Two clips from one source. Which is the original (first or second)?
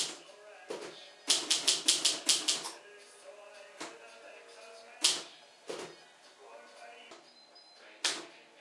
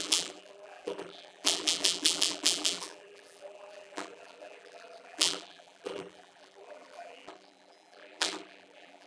first